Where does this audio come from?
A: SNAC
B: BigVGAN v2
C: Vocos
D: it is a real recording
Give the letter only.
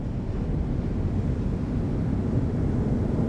D